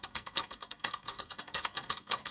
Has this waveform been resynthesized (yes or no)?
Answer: yes